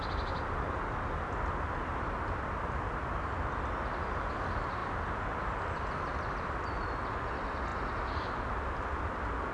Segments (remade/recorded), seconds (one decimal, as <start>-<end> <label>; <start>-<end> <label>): 0.0-9.5 recorded